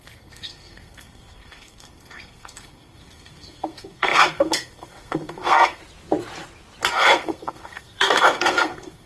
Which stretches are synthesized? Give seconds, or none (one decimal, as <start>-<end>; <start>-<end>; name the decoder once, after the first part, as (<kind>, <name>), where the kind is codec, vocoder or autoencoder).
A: 0.0-5.8 (codec, SNAC); 6.9-9.1